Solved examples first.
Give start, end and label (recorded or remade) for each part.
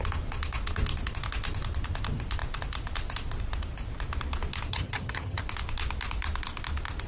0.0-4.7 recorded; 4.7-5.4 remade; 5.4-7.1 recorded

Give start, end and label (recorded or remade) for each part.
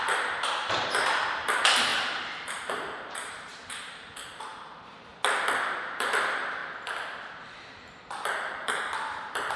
0.0-5.1 remade; 5.1-5.6 recorded; 5.6-6.6 remade; 6.6-7.7 recorded; 7.7-9.6 remade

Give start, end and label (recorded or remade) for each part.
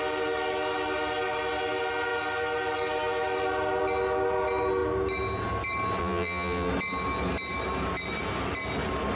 0.0-6.0 recorded; 6.0-6.7 remade; 6.7-9.2 recorded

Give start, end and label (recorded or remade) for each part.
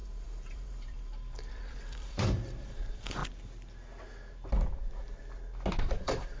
0.0-3.2 remade; 3.2-5.8 recorded; 5.8-6.4 remade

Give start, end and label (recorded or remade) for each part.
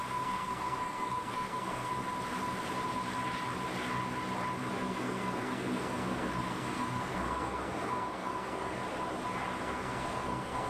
0.0-1.9 remade; 1.9-4.7 recorded; 4.7-8.8 remade; 8.8-9.6 recorded; 9.6-10.7 remade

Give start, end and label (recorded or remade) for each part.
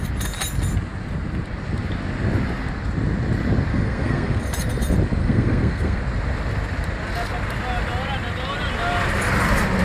0.0-3.7 recorded; 3.7-4.4 remade; 4.4-5.2 recorded; 5.2-6.0 remade; 6.0-9.8 recorded